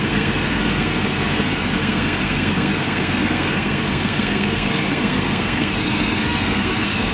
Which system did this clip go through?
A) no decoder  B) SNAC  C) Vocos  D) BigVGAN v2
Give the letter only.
B